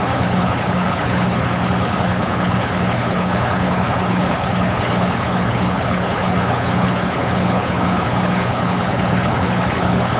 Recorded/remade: remade